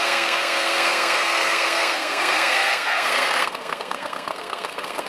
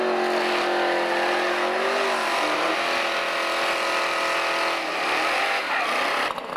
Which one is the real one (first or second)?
second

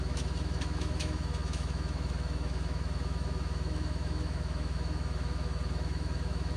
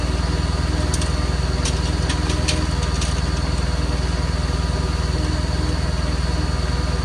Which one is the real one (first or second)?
second